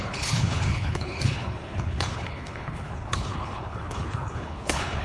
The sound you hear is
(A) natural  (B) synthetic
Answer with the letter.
B